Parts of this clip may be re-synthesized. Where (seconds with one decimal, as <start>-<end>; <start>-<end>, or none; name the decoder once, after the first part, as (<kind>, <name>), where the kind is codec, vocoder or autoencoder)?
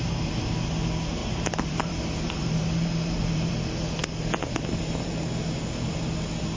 1.2-3.5 (vocoder, BigVGAN v2); 4.0-5.1